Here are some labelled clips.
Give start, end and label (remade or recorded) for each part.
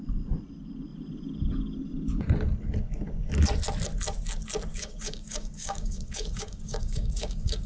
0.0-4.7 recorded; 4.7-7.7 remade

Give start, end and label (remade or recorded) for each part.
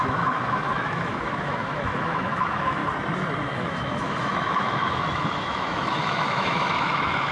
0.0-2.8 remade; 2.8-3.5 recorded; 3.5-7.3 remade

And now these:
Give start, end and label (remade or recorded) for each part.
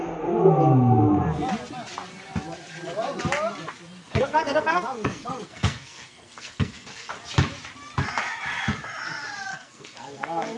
0.0-4.0 recorded; 4.0-7.1 remade; 7.1-9.5 recorded; 9.5-10.6 remade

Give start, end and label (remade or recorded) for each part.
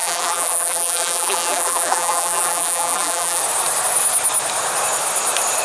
0.0-3.4 remade; 3.4-5.6 recorded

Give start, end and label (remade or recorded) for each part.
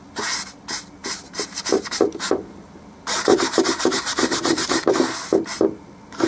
0.0-1.0 recorded; 1.0-2.5 remade; 2.5-3.3 recorded; 3.3-4.9 remade; 4.9-6.3 recorded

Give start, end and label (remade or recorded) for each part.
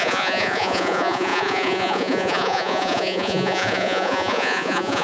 0.0-5.0 remade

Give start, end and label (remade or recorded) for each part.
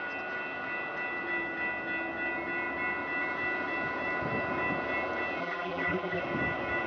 0.0-5.4 recorded; 5.4-6.2 remade; 6.2-6.9 recorded